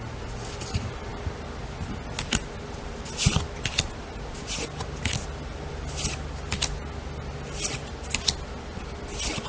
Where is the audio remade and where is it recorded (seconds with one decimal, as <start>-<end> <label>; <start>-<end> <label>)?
0.0-9.5 recorded